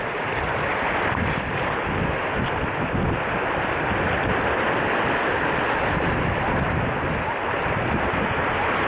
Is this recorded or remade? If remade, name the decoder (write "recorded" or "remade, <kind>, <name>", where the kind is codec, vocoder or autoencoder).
recorded